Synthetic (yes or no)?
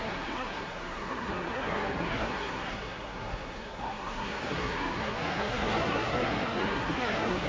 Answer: yes